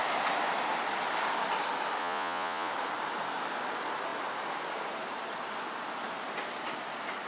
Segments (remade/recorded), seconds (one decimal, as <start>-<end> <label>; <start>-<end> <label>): 0.0-2.0 recorded; 2.0-2.7 remade; 2.7-7.3 recorded